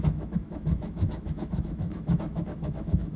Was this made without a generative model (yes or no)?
no